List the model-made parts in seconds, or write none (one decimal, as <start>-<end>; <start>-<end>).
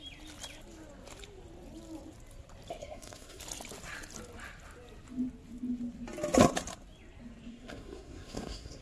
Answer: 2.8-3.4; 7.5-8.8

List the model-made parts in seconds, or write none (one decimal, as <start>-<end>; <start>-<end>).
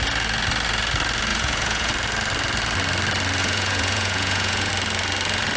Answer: 1.3-1.9; 3.4-4.7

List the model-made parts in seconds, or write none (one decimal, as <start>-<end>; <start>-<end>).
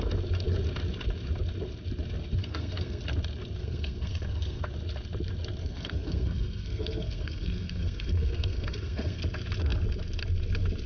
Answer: 2.4-3.0; 3.6-4.6; 5.6-9.2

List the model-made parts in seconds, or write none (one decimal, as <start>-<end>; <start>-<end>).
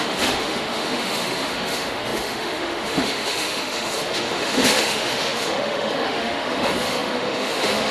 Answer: 0.0-7.9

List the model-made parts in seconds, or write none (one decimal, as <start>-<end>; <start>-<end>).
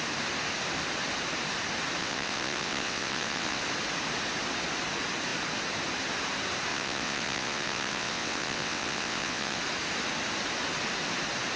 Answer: 2.0-3.6; 6.7-9.6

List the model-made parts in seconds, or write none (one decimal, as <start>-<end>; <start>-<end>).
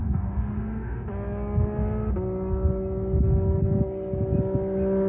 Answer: 0.0-1.1